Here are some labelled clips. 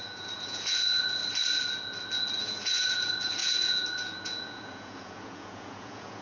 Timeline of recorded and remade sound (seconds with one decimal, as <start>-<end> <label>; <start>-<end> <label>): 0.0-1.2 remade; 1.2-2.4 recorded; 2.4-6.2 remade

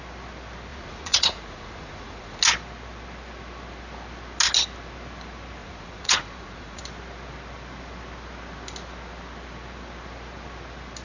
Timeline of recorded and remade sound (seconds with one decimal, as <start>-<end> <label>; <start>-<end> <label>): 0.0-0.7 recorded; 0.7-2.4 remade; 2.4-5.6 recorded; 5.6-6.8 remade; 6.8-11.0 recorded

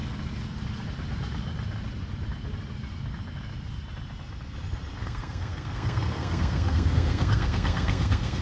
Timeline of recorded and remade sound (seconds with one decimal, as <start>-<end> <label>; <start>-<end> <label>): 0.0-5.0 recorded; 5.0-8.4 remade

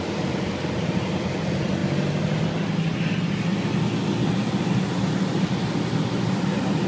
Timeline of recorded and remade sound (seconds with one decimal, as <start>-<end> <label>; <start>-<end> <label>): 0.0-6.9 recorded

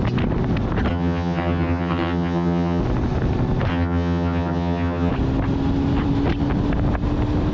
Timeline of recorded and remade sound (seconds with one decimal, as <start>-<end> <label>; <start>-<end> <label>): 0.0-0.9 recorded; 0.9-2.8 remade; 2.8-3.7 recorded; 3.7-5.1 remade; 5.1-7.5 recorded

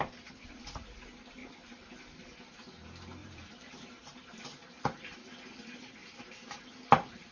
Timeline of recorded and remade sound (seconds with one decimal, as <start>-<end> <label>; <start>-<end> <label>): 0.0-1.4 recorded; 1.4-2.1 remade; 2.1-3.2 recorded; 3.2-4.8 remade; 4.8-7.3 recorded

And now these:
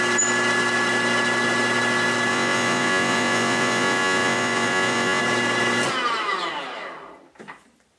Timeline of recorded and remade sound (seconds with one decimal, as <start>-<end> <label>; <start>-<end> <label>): 0.0-2.3 recorded; 2.3-5.2 remade; 5.2-8.0 recorded

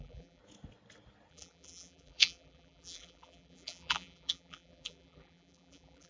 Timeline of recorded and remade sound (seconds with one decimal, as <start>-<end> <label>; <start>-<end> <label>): 0.0-0.4 remade; 0.4-1.3 recorded; 1.3-6.1 remade